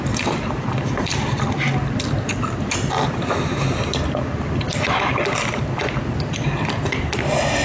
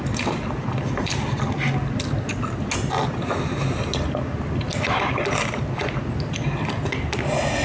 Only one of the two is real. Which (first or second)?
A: second